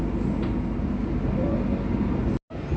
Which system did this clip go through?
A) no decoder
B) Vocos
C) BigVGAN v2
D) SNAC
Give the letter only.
A